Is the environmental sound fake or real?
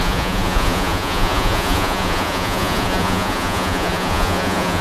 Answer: fake